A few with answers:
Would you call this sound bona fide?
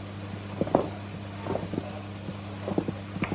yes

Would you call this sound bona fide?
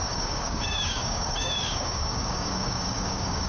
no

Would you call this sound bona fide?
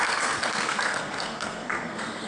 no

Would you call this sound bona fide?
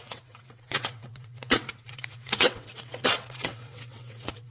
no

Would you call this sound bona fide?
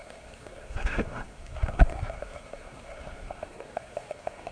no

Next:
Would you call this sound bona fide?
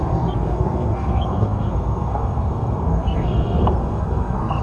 no